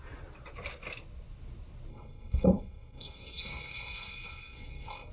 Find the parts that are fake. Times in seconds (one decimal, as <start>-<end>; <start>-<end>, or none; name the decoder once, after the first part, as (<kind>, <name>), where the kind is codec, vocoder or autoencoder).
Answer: 1.9-5.1 (codec, SNAC)